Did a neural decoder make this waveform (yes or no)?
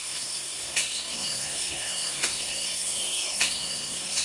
yes